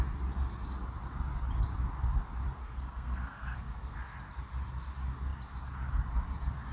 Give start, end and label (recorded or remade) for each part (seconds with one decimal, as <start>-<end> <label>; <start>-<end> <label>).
0.0-2.6 recorded; 2.6-4.0 remade; 4.0-6.7 recorded